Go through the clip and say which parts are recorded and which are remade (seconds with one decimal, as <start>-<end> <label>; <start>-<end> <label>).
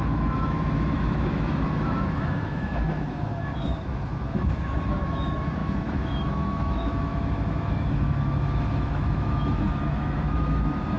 0.0-11.0 remade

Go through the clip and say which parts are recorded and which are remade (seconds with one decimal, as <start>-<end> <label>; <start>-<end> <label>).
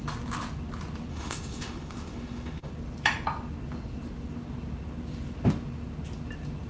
0.0-1.1 recorded; 1.1-2.7 remade; 2.7-6.7 recorded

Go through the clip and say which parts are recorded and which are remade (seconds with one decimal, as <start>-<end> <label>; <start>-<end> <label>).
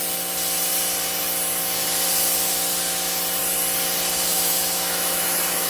0.0-4.3 recorded; 4.3-5.7 remade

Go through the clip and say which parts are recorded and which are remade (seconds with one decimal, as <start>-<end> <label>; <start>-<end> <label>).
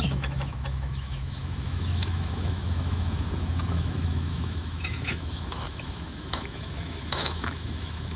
0.0-8.2 remade